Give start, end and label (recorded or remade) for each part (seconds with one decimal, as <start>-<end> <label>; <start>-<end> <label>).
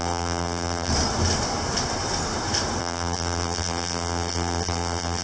0.0-0.9 remade; 0.9-2.8 recorded; 2.8-5.2 remade